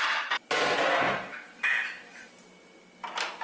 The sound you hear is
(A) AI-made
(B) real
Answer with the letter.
B